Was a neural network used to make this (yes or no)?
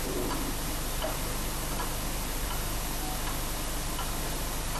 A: no